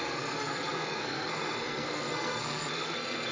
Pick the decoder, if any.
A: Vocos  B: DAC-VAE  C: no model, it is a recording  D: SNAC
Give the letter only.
D